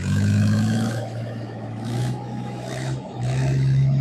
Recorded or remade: remade